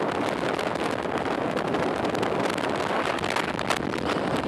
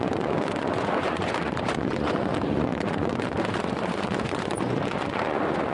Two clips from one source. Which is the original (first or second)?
first